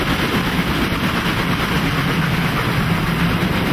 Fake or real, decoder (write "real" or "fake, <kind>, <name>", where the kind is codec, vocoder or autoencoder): real